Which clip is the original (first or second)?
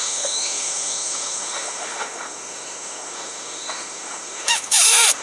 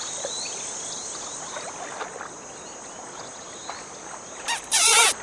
second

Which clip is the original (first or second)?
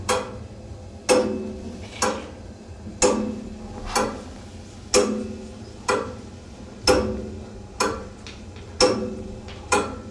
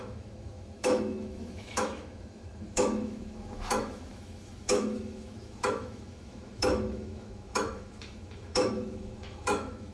first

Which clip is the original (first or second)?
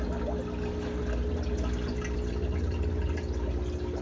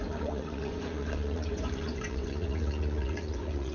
first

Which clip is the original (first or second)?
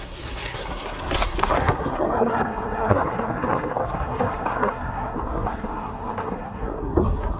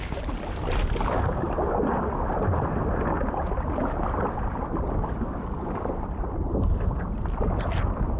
second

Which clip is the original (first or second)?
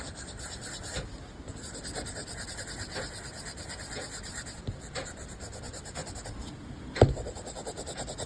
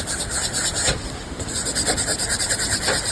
first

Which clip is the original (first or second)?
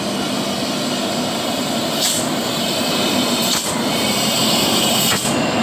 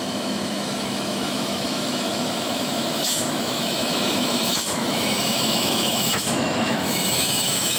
first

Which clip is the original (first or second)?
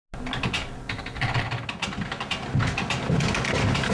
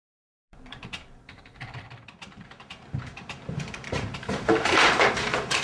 first